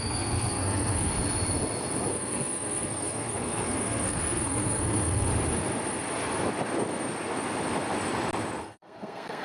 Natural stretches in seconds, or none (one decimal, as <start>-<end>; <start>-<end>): 1.1-2.1; 5.3-8.6